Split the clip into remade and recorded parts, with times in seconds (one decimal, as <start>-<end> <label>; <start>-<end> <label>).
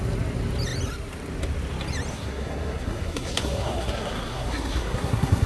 0.0-2.1 recorded; 2.1-5.5 remade